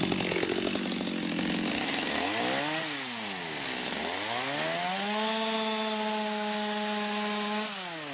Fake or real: real